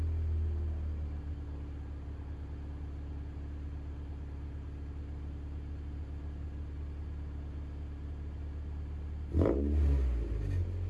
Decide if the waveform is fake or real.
real